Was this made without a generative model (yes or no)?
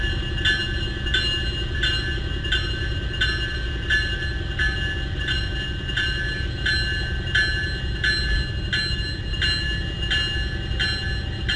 yes